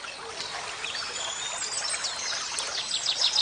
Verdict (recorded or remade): recorded